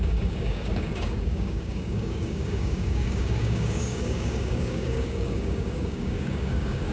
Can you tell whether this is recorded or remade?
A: remade